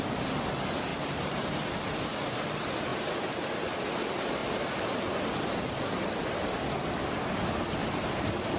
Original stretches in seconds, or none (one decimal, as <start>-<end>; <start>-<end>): 0.0-0.9; 2.1-4.4; 5.0-7.8